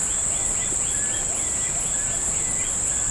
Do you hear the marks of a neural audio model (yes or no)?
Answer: no